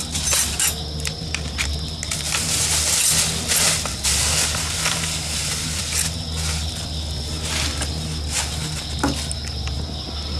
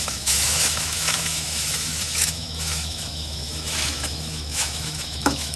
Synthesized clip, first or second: second